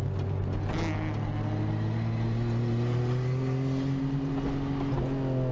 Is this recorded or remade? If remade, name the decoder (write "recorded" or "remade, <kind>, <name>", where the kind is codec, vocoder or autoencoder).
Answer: recorded